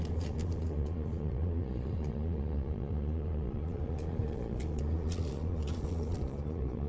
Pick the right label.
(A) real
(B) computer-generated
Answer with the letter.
B